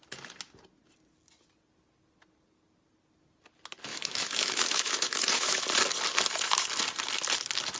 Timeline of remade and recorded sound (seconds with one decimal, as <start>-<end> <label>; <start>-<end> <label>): 0.0-3.9 recorded; 3.9-5.6 remade; 5.6-7.8 recorded